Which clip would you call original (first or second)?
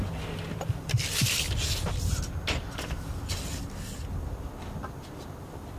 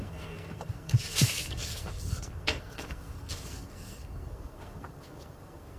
first